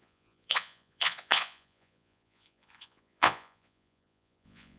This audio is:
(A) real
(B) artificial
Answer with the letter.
B